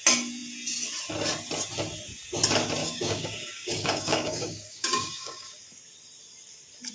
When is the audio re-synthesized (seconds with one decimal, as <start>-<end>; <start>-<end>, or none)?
2.8-5.6